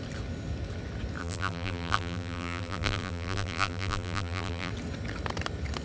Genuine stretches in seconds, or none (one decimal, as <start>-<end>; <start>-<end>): 0.0-1.2; 4.7-5.8